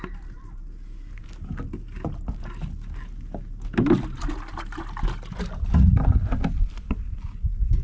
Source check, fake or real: real